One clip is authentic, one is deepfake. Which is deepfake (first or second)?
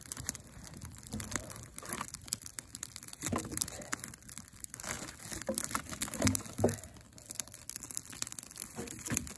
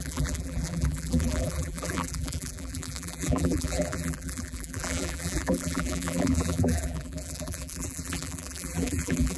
second